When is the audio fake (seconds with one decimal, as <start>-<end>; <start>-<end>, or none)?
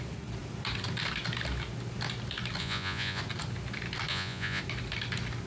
2.6-3.2; 4.1-4.6